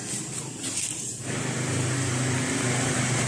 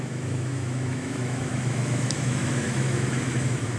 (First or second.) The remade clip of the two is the second